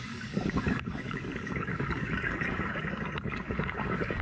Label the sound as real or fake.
fake